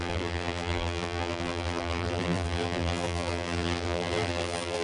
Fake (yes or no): yes